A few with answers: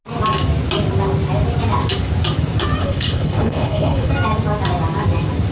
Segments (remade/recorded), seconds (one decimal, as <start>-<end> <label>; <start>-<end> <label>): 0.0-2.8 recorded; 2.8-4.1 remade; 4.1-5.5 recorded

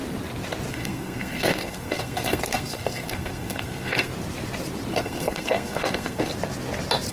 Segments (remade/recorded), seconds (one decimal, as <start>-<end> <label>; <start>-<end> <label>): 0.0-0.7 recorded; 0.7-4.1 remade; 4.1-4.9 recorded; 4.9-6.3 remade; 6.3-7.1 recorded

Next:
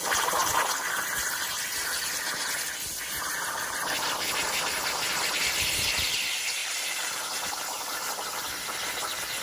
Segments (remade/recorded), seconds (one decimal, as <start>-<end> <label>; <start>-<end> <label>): 0.0-6.6 recorded; 6.6-7.2 remade; 7.2-9.4 recorded

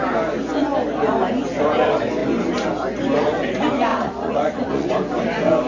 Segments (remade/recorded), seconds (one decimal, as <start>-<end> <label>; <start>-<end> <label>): 0.0-3.9 recorded; 3.9-4.9 remade; 4.9-5.7 recorded

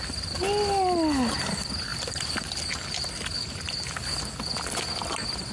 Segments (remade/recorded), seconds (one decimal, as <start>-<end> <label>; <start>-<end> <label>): 0.0-5.5 recorded